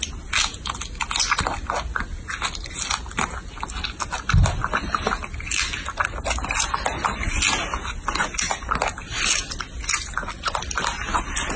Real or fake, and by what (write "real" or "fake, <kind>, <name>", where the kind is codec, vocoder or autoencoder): real